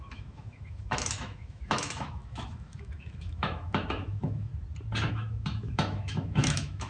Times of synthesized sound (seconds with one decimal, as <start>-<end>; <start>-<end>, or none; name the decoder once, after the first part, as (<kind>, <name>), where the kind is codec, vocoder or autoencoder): 0.0-4.5 (autoencoder, DAC-VAE); 5.1-6.9